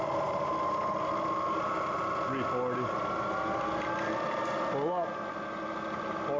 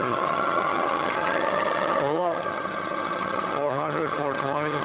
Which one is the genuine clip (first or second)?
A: first